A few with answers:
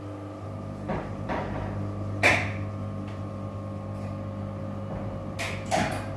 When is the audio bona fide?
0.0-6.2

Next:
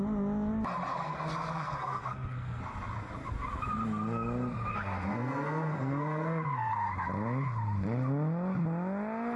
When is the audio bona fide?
0.0-0.9; 2.6-4.7; 6.7-9.4

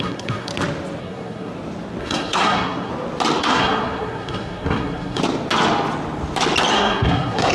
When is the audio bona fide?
0.5-1.0; 1.5-2.0; 2.9-3.4; 5.2-6.7

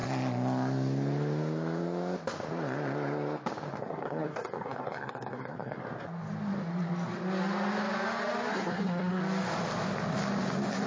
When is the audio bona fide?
0.0-3.8; 5.8-8.5; 9.2-10.9

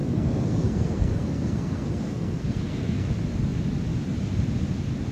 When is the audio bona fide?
3.1-5.1